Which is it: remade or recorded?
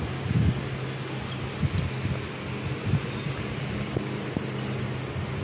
recorded